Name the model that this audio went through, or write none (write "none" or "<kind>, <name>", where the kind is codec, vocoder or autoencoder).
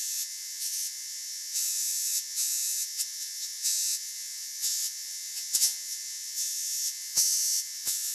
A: vocoder, Vocos